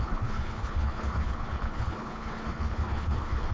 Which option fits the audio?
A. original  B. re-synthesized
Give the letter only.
B